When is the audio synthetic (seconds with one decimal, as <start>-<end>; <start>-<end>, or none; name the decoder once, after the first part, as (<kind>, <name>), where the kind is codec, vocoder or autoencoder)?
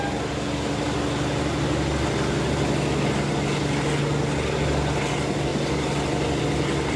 none